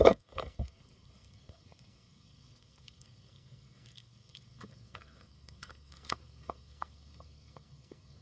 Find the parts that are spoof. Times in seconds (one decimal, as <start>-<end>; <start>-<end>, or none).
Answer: 0.0-8.2